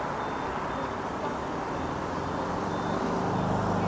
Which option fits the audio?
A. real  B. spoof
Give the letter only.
A